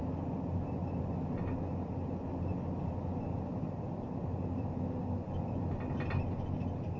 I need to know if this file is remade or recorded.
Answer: recorded